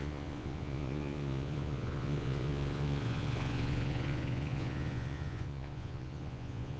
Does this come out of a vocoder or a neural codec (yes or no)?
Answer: yes